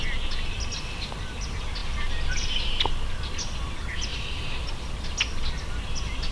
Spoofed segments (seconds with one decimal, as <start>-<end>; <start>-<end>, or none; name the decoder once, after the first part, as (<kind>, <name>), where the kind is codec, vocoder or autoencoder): none